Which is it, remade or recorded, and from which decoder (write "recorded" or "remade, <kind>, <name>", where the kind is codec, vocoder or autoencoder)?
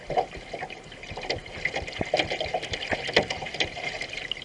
recorded